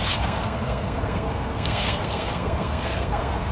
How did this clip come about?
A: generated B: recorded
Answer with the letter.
A